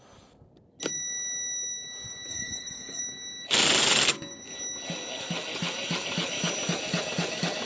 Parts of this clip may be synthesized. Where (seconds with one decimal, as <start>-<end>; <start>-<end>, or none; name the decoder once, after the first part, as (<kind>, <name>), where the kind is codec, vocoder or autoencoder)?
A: 2.3-3.0 (codec, DAC)